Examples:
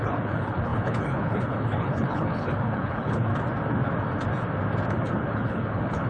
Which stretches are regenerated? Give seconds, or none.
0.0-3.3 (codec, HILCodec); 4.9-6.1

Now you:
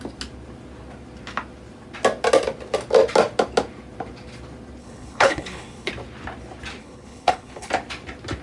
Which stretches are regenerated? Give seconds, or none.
4.8-5.9 (codec, HILCodec); 6.8-7.7

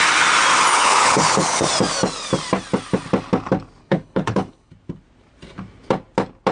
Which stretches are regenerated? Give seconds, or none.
0.7-1.7 (codec, HILCodec); 3.8-4.7

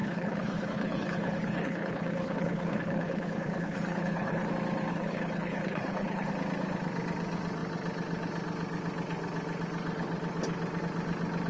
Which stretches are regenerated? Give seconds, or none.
0.0-4.5 (codec, HILCodec); 4.9-6.3

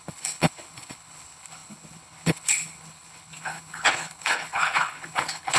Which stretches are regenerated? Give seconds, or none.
0.0-5.6 (codec, HILCodec)

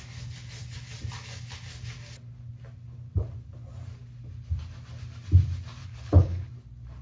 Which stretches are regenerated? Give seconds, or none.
5.8-6.5 (codec, HILCodec)

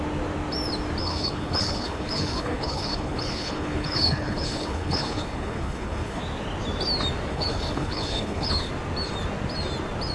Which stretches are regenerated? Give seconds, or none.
1.0-6.2 (codec, HILCodec); 7.3-8.7